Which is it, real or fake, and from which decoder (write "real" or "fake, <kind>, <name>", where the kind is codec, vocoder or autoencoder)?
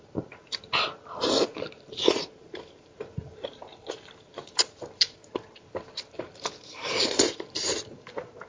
fake, vocoder, BigVGAN v2